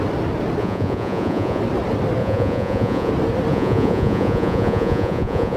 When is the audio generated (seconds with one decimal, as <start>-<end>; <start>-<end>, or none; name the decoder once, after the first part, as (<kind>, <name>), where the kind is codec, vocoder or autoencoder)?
0.6-1.6 (vocoder, Vocos); 2.2-3.1; 3.5-5.6